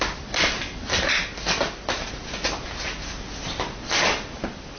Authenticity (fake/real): real